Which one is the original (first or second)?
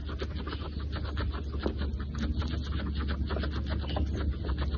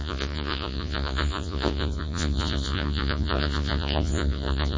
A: first